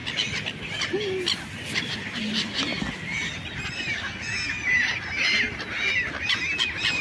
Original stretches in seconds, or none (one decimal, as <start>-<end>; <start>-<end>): 1.9-7.0